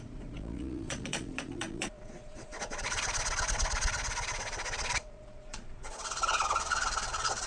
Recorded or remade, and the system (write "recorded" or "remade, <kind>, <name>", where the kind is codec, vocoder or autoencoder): remade, vocoder, Vocos